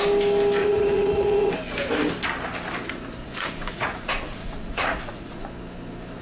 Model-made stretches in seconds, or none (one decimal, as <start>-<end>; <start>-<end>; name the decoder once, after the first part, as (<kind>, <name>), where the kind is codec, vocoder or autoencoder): 0.6-1.5 (vocoder, Vocos); 3.2-5.5